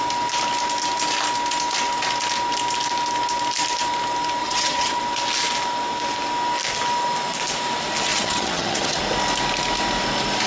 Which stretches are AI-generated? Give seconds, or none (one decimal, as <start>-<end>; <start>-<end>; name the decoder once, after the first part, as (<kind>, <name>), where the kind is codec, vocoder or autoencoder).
4.4-5.0 (vocoder, HiFi-GAN); 8.1-9.0